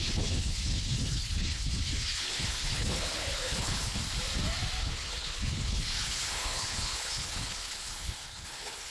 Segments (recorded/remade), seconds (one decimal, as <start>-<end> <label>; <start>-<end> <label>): 0.0-4.0 remade; 4.0-4.8 recorded; 4.8-8.9 remade